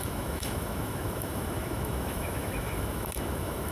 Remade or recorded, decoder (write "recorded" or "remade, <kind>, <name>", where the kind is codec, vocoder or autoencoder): remade, autoencoder, DAC-VAE